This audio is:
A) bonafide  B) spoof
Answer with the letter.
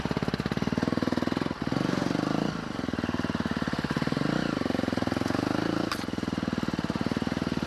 A